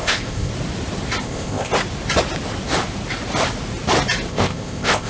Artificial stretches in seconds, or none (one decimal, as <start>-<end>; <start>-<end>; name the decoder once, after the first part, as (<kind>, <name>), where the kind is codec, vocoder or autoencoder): 0.0-0.5 (codec, ZipCodec); 1.2-1.7; 4.3-5.1